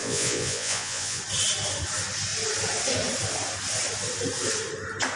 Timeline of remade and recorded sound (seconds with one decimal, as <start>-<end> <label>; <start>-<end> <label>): 0.0-1.2 remade; 1.2-5.2 recorded